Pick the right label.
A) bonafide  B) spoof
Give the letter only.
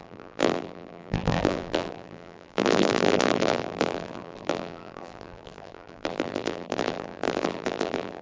B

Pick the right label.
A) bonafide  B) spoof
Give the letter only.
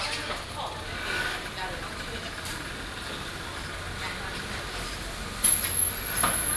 A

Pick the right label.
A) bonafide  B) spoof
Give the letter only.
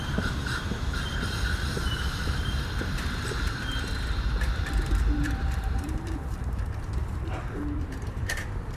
B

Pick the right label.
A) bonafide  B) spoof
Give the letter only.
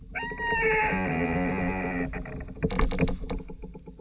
A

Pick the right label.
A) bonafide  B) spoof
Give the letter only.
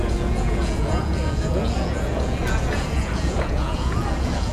B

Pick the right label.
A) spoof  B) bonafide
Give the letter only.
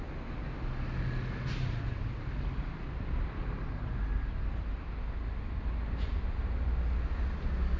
B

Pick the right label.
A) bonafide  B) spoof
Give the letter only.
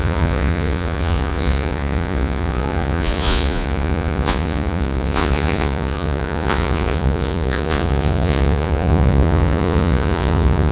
B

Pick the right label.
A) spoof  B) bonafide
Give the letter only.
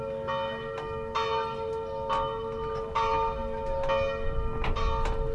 B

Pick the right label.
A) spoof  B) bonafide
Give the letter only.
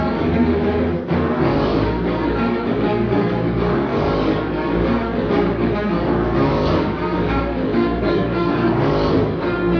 A